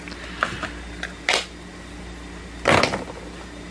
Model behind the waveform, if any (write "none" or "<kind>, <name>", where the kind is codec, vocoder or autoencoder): none